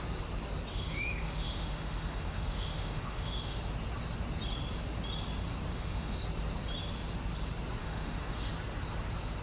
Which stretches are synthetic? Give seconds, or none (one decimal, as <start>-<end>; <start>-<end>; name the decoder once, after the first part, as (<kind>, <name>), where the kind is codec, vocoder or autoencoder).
0.7-3.6 (autoencoder, DAC-VAE); 5.7-6.2; 7.8-8.5